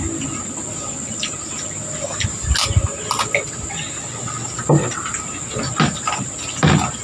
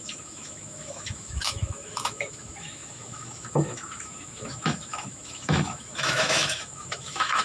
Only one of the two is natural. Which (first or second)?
first